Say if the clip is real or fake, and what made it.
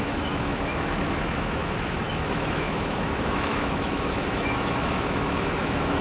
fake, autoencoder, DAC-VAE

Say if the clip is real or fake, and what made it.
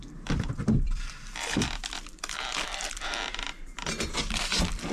fake, vocoder, BigVGAN v2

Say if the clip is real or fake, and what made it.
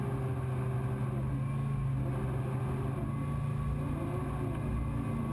real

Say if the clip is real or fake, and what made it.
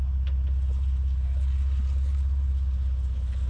real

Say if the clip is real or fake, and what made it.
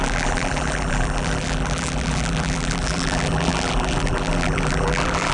fake, vocoder, BigVGAN v2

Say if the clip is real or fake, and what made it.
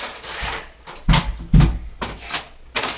real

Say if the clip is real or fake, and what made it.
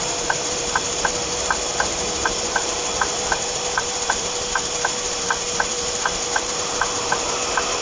fake, vocoder, BigVGAN v2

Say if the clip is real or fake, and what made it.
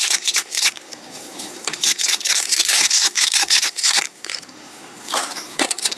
fake, codec, SNAC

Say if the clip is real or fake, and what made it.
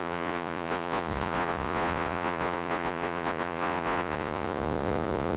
fake, vocoder, Vocos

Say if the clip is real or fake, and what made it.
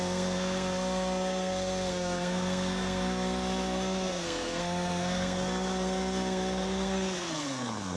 fake, codec, SNAC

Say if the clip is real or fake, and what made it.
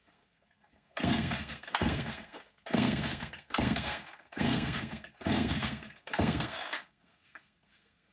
fake, codec, SNAC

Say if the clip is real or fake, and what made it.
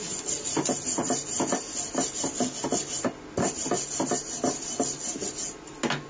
real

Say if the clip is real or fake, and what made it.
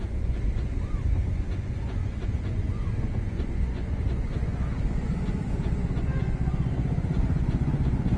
fake, vocoder, Vocos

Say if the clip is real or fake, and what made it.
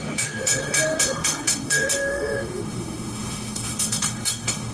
fake, autoencoder, DAC-VAE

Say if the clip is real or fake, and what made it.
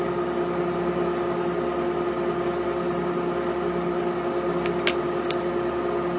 real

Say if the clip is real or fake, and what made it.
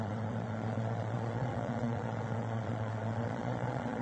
fake, vocoder, Vocos